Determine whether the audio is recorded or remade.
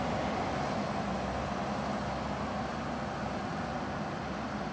recorded